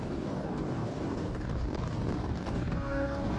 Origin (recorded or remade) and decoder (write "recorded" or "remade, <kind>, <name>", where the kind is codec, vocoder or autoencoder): remade, codec, DAC